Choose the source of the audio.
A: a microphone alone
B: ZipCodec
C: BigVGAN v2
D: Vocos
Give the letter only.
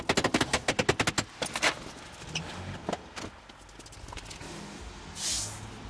A